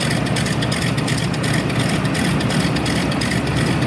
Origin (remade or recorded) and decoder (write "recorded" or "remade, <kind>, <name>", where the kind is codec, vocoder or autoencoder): recorded